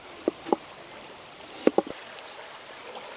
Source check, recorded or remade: recorded